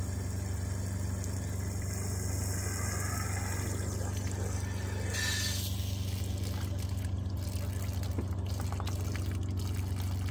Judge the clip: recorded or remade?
recorded